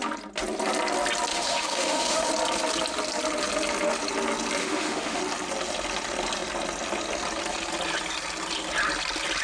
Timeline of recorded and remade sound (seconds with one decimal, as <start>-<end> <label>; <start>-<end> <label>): 0.0-1.3 recorded; 1.3-2.3 remade; 2.3-4.6 recorded; 4.6-5.2 remade; 5.2-9.4 recorded